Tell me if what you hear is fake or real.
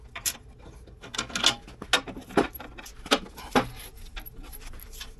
real